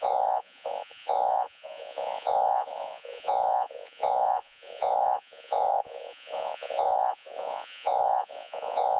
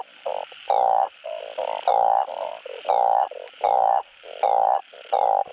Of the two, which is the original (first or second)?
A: second